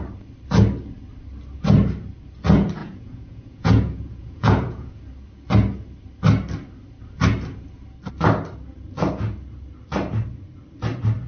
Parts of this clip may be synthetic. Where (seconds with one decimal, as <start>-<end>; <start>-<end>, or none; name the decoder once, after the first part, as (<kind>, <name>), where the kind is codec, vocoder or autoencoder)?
2.8-5.0 (vocoder, Vocos)